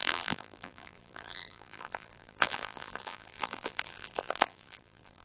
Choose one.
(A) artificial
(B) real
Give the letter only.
A